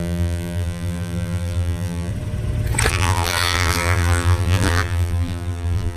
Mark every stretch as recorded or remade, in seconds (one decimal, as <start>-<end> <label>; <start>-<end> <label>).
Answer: 0.0-2.1 remade; 2.1-2.9 recorded; 2.9-6.0 remade